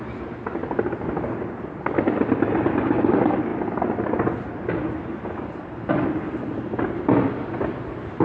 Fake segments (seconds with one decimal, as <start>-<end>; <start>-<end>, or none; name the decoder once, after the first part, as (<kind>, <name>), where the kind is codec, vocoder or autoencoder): none